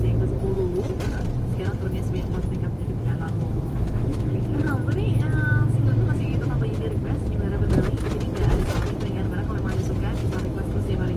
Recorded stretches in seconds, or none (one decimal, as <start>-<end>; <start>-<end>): 0.0-2.8; 4.3-10.2